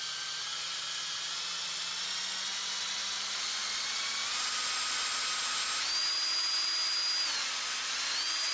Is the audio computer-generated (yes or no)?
no